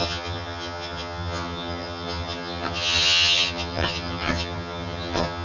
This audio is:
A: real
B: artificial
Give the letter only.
B